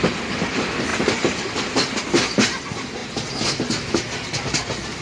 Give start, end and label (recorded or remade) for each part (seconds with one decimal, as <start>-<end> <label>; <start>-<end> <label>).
0.0-5.0 recorded